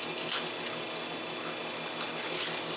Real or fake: real